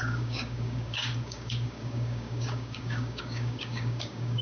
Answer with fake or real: fake